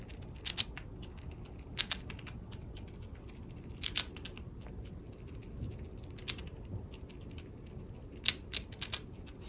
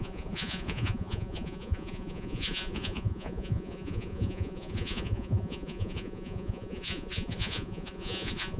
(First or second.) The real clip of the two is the first